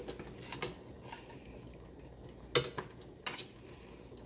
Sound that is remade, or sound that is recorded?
recorded